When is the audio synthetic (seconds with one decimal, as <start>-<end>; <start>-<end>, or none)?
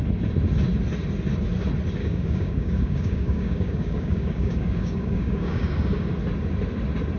2.0-5.7